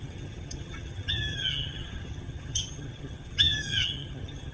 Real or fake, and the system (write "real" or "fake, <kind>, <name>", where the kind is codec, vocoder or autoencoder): fake, vocoder, HiFi-GAN